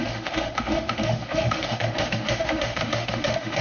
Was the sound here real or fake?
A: fake